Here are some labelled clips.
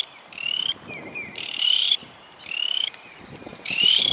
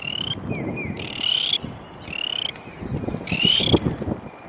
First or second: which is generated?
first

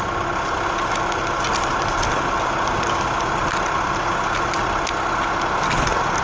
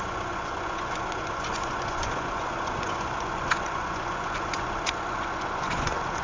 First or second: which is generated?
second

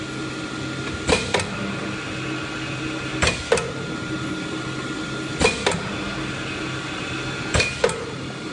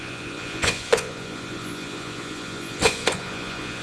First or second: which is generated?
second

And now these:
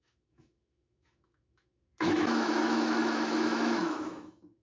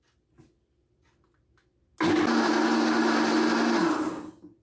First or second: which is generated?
first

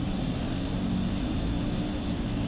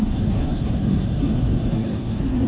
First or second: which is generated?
second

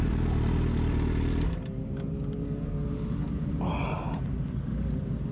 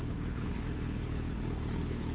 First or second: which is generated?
second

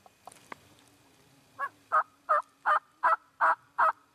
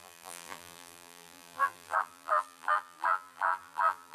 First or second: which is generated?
second